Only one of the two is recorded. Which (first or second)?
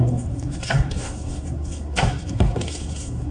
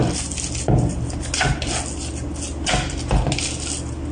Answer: second